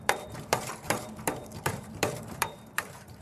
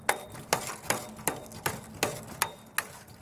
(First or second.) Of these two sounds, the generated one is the first